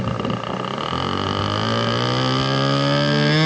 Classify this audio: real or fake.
real